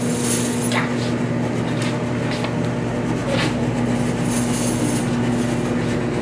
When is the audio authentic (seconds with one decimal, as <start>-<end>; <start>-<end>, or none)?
0.0-6.2

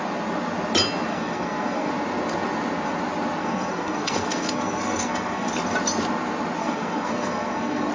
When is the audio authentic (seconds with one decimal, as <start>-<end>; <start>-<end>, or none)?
0.0-1.1; 1.9-3.4; 5.5-6.6